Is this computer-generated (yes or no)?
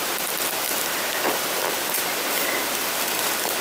yes